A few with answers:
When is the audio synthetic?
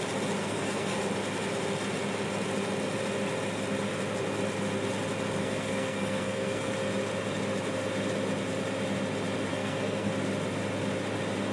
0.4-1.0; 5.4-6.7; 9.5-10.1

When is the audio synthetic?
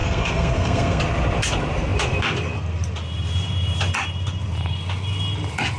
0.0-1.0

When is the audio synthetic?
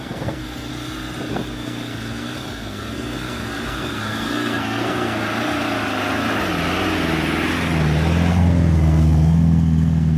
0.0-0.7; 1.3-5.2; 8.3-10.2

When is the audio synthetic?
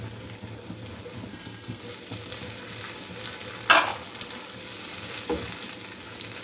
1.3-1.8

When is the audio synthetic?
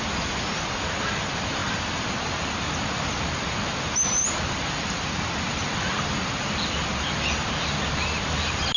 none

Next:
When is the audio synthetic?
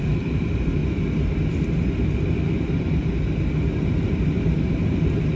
none